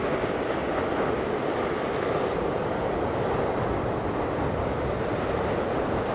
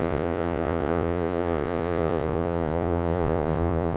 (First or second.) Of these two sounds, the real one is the first